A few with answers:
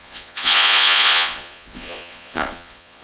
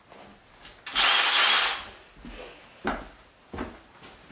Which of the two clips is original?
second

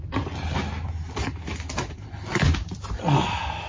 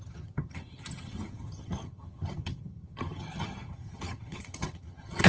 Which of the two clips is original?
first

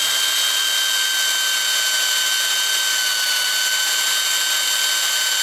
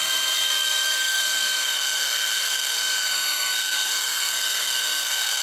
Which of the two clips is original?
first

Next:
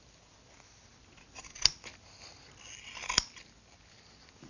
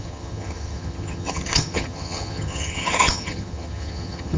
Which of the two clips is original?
first